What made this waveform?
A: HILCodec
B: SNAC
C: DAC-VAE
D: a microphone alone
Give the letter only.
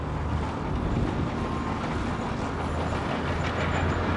D